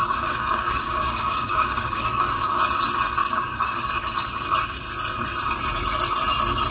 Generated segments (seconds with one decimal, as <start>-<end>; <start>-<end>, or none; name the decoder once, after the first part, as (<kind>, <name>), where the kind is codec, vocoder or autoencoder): 0.0-2.6 (codec, DAC); 3.2-3.9